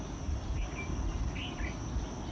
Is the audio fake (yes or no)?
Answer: no